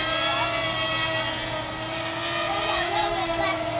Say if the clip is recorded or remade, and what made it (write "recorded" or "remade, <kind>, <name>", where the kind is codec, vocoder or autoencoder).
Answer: recorded